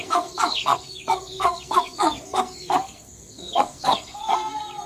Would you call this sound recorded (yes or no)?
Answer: no